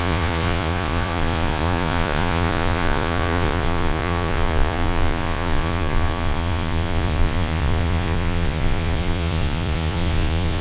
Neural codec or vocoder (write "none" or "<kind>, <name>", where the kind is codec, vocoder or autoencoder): vocoder, Vocos